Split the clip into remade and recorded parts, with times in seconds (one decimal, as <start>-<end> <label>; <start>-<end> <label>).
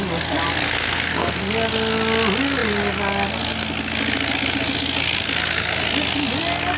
0.0-0.6 recorded; 0.6-1.4 remade; 1.4-6.8 recorded